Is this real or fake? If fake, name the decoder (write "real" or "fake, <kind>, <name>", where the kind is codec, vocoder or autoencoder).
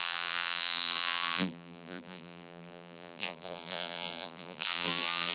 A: fake, vocoder, BigVGAN v2